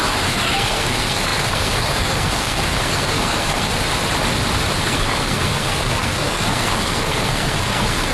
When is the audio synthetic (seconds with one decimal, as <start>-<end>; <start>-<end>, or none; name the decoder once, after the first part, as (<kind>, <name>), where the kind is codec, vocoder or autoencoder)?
0.0-3.7 (codec, SNAC); 4.8-8.1